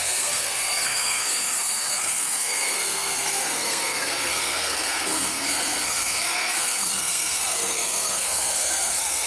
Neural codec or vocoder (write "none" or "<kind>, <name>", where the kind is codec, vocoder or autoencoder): codec, SNAC